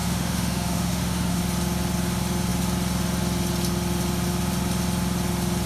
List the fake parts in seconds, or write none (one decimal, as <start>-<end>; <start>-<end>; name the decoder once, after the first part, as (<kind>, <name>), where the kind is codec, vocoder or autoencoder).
0.0-1.4 (autoencoder, DAC-VAE)